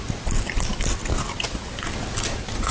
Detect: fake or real real